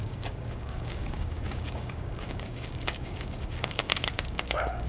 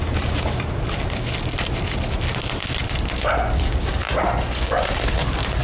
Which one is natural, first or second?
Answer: second